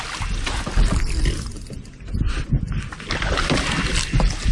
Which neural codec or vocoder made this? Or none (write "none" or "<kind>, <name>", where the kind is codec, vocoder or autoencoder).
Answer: none